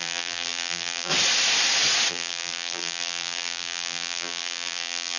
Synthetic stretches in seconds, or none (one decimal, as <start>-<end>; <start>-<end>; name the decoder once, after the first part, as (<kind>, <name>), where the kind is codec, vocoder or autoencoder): 0.0-1.1 (vocoder, BigVGAN v2); 2.1-5.2